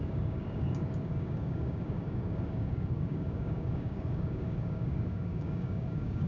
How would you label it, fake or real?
fake